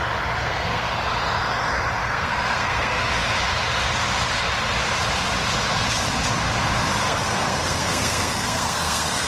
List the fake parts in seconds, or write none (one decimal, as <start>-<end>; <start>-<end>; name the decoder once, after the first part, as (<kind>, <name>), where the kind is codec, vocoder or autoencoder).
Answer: 0.4-0.9 (codec, SNAC); 2.0-3.1; 7.0-9.3